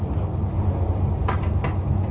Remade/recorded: recorded